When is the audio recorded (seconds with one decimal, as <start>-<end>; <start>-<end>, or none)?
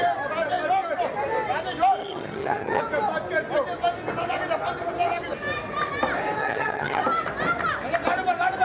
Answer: 0.0-2.0; 2.8-6.4; 7.0-8.6